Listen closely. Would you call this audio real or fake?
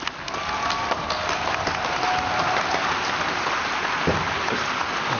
real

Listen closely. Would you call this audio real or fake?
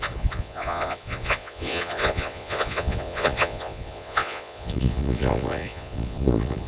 fake